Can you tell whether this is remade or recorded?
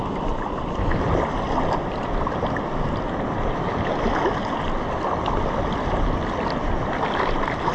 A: recorded